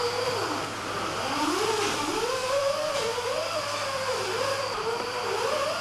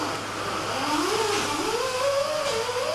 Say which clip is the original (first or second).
second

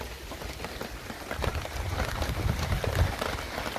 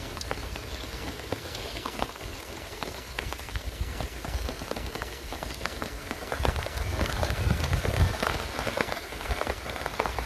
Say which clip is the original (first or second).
first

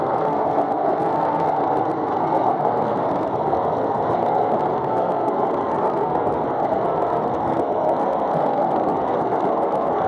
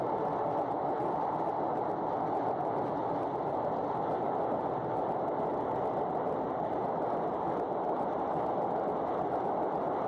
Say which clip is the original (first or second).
second